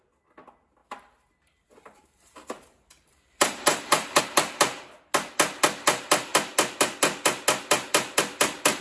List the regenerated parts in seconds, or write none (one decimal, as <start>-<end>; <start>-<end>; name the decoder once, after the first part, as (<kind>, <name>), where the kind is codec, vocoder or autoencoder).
0.8-4.2 (vocoder, BigVGAN v2)